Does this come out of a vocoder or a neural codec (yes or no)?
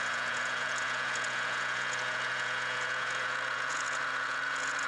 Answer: yes